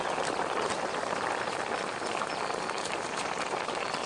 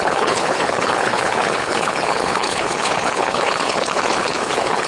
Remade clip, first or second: second